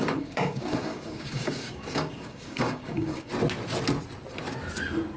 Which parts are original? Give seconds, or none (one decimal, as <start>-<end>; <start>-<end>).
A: 3.3-5.2